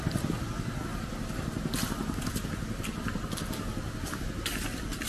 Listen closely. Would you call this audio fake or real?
real